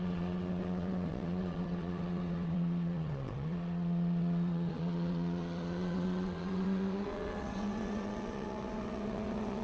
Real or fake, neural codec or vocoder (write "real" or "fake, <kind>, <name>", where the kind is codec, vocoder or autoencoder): fake, vocoder, WaveNeXt